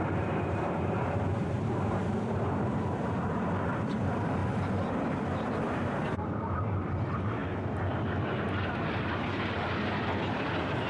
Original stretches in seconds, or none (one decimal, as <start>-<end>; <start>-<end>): 4.4-4.9; 7.4-9.0